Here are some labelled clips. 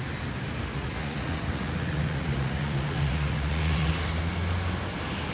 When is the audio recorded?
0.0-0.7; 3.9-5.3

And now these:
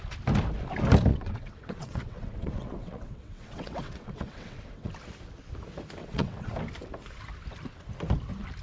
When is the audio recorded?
0.0-1.1; 4.9-6.0; 6.5-8.6

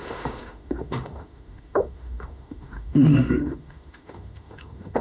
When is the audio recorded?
none